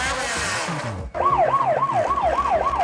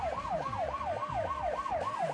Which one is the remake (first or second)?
second